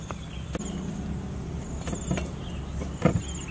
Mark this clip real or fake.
real